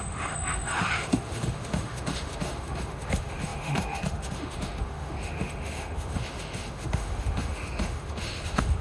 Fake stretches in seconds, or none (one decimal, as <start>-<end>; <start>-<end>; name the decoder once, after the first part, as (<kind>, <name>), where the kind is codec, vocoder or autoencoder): 0.0-8.8 (autoencoder, DAC-VAE)